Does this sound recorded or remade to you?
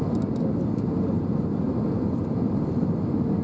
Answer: recorded